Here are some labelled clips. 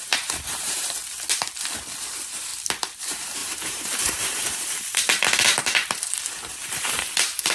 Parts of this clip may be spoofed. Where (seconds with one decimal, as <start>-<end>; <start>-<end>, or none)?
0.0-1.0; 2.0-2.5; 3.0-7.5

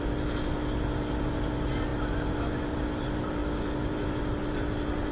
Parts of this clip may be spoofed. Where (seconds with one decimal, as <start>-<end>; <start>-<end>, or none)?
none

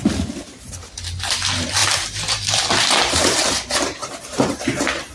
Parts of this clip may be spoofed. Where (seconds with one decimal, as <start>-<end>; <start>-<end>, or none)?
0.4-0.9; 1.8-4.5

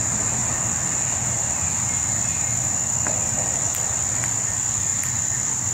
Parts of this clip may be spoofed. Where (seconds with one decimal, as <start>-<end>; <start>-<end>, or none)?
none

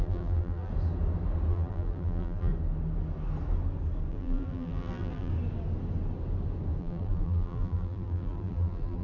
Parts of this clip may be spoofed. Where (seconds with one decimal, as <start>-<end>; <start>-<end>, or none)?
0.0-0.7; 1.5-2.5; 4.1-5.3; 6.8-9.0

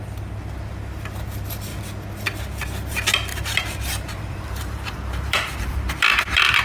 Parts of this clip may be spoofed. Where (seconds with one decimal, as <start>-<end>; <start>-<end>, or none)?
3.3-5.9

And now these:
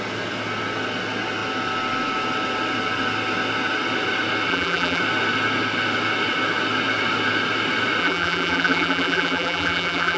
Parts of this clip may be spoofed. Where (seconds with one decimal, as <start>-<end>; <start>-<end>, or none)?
4.5-5.0; 8.0-10.2

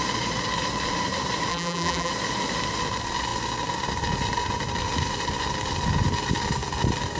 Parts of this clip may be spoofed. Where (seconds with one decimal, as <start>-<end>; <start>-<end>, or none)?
1.5-2.1